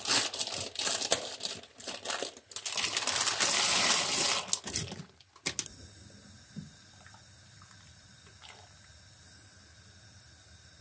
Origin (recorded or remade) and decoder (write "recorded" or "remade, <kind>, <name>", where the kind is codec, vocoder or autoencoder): recorded